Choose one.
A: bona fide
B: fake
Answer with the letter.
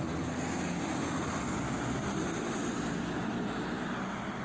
A